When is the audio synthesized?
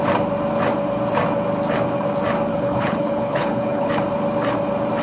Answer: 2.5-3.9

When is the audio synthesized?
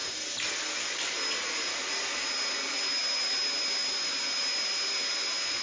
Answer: none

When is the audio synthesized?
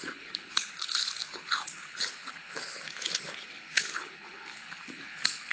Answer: 0.0-5.5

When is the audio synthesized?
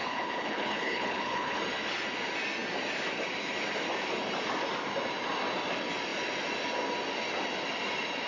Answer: 0.0-1.6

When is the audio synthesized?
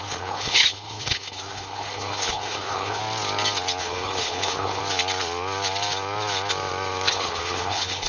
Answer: 0.0-3.0; 3.8-4.8; 7.1-8.1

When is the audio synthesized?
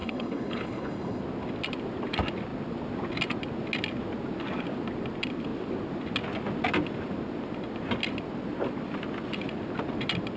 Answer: 0.0-1.2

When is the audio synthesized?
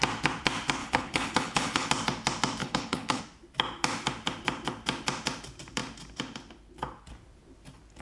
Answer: 0.8-1.9; 2.6-3.2